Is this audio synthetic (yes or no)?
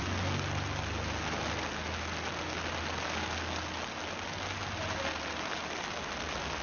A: no